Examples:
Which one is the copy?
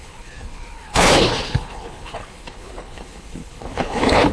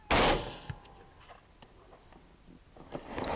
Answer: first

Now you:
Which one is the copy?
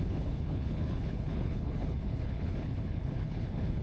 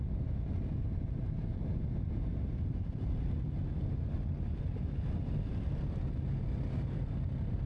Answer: first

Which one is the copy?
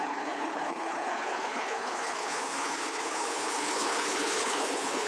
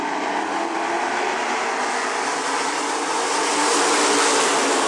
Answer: first